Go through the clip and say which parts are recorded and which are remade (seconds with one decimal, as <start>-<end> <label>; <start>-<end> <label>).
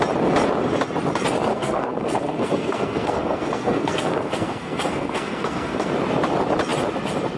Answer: 0.0-1.5 recorded; 1.5-5.9 remade; 5.9-7.4 recorded